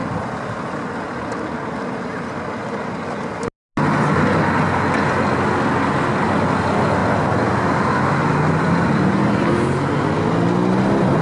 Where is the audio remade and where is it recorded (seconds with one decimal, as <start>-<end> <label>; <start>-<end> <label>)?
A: 0.0-11.2 recorded